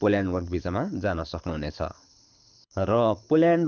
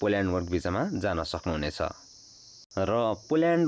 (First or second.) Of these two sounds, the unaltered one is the second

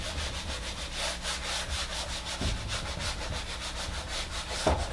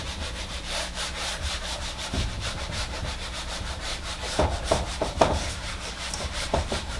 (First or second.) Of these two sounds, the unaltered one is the first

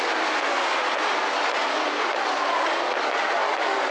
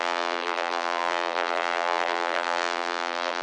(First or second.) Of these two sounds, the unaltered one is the first